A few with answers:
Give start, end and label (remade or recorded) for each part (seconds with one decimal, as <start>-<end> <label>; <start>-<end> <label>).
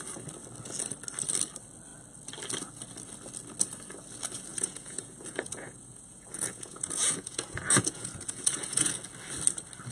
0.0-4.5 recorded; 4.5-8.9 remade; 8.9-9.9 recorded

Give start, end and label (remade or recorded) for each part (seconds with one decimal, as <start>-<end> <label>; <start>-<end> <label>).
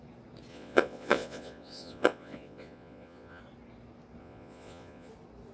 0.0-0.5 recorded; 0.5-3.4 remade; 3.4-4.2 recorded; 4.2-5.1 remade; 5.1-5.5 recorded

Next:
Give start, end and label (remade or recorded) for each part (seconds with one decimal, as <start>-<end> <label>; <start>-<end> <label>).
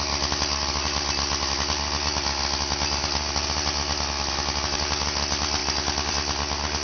0.0-6.8 recorded